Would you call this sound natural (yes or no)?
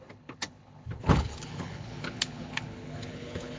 no